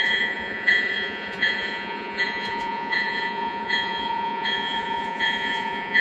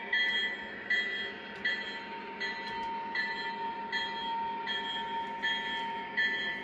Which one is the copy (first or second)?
first